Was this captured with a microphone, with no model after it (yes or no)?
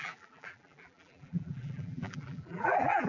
no